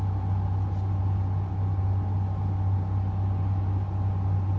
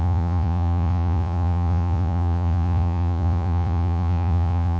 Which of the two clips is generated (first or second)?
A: second